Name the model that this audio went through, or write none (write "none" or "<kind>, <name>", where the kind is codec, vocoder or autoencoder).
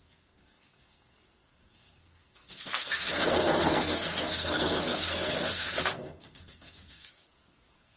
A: codec, SNAC